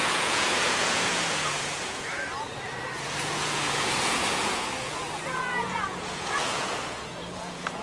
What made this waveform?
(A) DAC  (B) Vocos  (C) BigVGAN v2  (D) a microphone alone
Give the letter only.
B